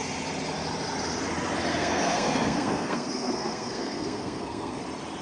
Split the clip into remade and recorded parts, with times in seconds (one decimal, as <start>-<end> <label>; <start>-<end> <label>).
0.0-1.7 recorded; 1.7-4.8 remade; 4.8-5.2 recorded